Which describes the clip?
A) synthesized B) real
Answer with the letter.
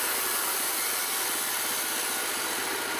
B